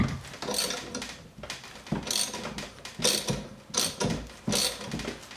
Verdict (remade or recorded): recorded